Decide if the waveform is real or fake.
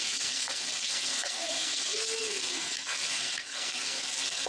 fake